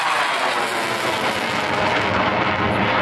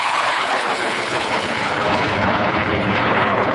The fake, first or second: second